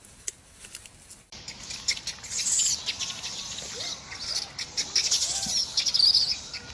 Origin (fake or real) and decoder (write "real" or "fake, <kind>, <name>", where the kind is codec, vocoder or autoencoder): real